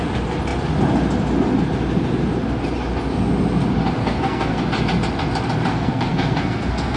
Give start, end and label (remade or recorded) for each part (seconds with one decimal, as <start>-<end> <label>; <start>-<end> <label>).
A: 0.0-4.0 recorded; 4.0-4.6 remade; 4.6-5.7 recorded; 5.7-7.0 remade